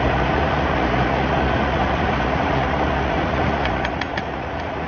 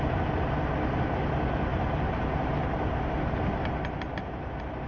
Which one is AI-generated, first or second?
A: first